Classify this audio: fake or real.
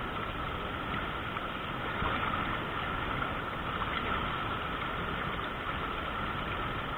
real